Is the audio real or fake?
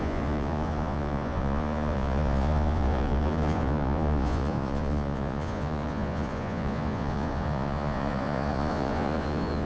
fake